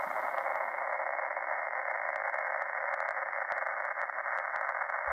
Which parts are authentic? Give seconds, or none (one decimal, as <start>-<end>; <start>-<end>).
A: 0.0-5.1